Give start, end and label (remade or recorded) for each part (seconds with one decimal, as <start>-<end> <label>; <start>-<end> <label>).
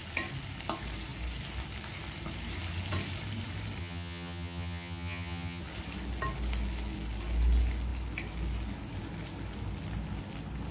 0.0-3.8 recorded; 3.8-5.6 remade; 5.6-10.7 recorded